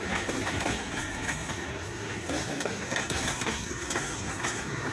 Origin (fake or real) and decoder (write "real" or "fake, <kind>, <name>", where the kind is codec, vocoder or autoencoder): fake, codec, SNAC